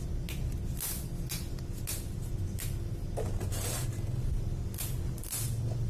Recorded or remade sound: recorded